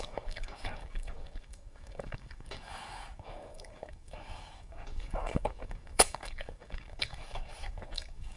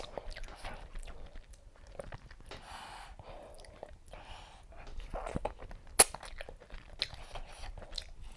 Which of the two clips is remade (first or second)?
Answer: first